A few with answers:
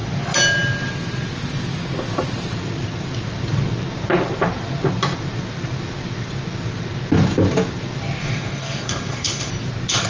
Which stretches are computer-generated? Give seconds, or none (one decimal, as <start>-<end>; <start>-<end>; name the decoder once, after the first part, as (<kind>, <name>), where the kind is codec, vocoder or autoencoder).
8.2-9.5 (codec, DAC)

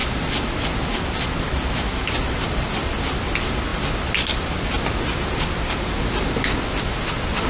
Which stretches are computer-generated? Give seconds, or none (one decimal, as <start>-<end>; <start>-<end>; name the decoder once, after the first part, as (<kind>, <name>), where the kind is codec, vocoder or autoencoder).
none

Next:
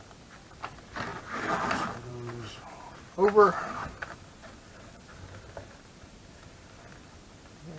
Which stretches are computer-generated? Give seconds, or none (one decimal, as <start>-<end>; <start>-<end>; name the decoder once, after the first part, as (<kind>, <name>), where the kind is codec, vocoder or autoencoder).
4.4-5.0 (vocoder, WaveNeXt)